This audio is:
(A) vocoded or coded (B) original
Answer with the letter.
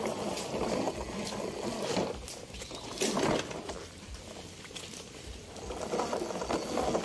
B